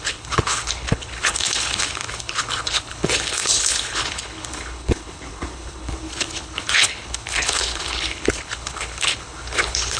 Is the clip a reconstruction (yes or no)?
yes